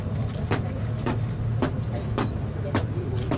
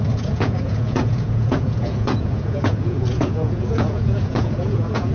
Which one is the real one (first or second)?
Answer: first